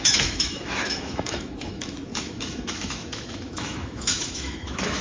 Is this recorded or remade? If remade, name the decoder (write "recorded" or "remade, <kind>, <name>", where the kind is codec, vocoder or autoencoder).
remade, autoencoder, DAC-VAE